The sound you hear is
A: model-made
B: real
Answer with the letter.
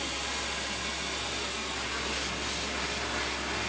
B